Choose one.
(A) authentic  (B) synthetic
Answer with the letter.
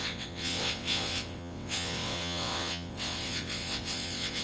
B